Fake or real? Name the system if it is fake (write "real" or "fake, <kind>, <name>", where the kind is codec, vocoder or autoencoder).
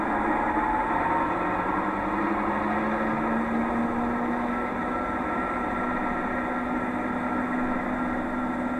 real